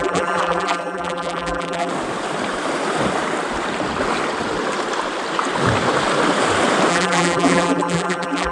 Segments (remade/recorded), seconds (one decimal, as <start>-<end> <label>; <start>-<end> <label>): 0.0-1.9 remade; 1.9-6.9 recorded; 6.9-8.5 remade